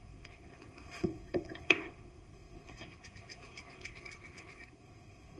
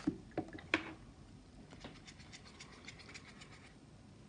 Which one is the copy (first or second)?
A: first